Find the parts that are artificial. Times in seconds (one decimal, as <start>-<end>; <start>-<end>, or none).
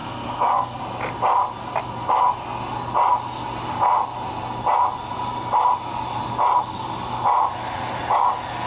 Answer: 0.0-0.8